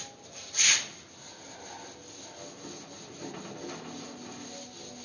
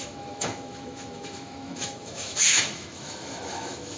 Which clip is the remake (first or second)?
second